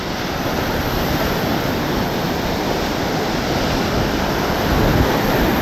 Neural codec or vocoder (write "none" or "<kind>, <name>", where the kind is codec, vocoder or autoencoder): vocoder, BigVGAN v2